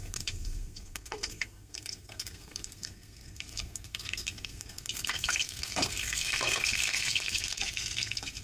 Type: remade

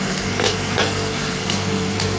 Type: remade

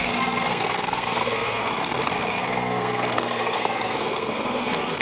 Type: remade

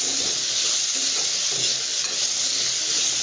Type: recorded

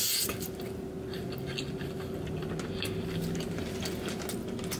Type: recorded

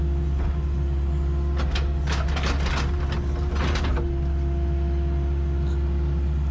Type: recorded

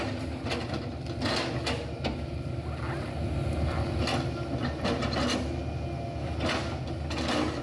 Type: recorded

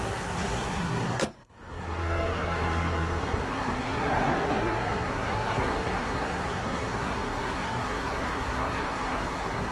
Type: remade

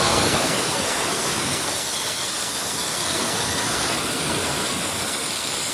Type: remade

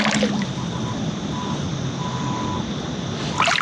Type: recorded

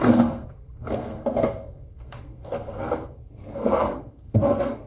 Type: remade